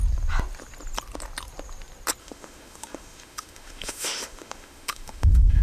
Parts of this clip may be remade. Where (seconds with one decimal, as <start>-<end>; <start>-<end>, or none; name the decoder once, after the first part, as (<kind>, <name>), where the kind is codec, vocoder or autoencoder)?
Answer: 2.2-5.6 (autoencoder, DAC-VAE)